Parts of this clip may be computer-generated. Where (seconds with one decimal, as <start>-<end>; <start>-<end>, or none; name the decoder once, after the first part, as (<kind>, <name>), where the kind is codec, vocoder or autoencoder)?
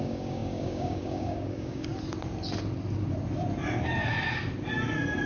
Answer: 0.0-1.9 (codec, DAC)